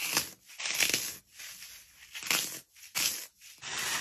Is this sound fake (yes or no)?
no